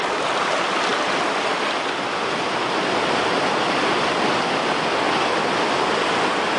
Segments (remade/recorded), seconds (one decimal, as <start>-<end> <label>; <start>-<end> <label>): 0.0-6.6 recorded